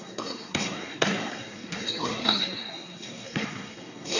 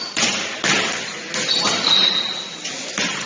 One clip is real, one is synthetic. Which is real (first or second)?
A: second